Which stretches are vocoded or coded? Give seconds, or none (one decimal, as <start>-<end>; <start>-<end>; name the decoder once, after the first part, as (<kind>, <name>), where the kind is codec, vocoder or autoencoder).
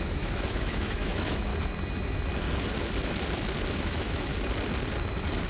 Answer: 0.0-1.5 (autoencoder, DAC-VAE); 3.7-4.3